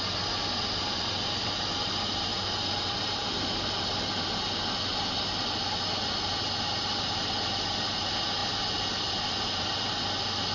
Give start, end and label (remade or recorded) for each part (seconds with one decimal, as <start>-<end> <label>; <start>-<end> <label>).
0.0-10.5 recorded

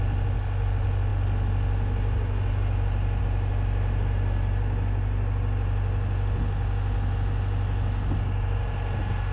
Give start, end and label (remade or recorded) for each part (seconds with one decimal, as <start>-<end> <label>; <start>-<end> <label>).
0.0-9.3 recorded

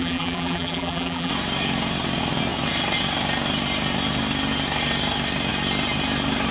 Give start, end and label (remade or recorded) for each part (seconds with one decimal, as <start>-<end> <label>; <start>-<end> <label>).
0.0-1.3 remade; 1.3-6.5 recorded

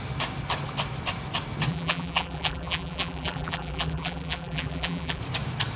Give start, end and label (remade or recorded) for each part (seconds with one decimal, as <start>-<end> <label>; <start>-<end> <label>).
0.0-1.7 recorded; 1.7-5.2 remade; 5.2-5.8 recorded

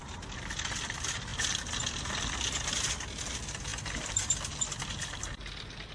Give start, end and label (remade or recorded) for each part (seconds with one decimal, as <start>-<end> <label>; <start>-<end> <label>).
0.0-5.9 recorded

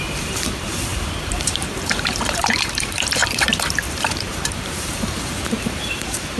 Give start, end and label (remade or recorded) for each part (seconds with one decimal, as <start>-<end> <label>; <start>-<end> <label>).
0.0-6.4 remade